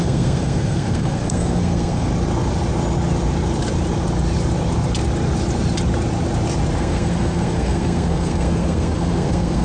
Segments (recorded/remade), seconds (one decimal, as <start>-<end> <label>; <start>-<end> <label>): 0.0-2.1 remade; 2.1-6.8 recorded; 6.8-9.6 remade

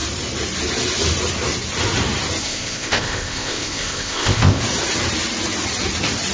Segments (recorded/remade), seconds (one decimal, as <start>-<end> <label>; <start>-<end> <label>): 0.0-2.4 recorded; 2.4-4.6 remade; 4.6-6.3 recorded

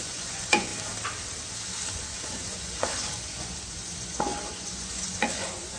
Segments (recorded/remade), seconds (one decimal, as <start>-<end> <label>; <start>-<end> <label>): 0.0-0.7 remade; 0.7-1.9 recorded; 1.9-5.8 remade

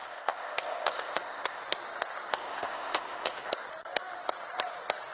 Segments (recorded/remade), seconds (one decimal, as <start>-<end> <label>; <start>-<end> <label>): 0.0-1.6 remade; 1.6-2.3 recorded; 2.3-3.5 remade; 3.5-5.1 recorded

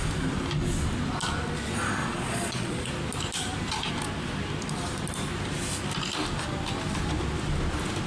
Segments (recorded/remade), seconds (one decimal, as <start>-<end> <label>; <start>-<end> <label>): 0.0-2.0 recorded; 2.0-2.9 remade; 2.9-8.1 recorded